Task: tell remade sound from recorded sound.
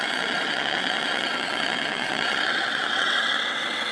remade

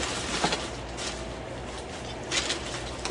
recorded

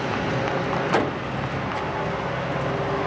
recorded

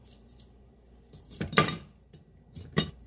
remade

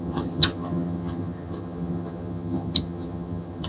remade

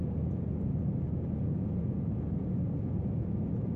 remade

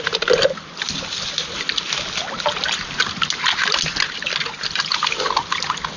recorded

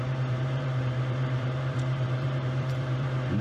remade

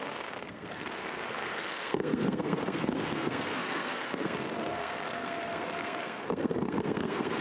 remade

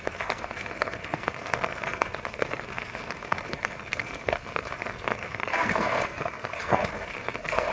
remade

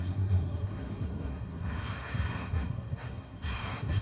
remade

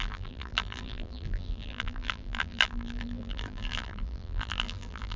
remade